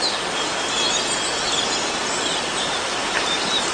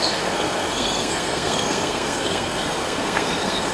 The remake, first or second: second